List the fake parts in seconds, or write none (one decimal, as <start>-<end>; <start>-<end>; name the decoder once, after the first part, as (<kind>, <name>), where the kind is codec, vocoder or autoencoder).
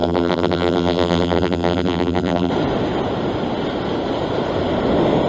0.0-2.5 (vocoder, BigVGAN v2)